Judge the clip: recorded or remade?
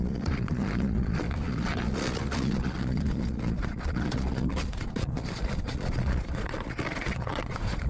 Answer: remade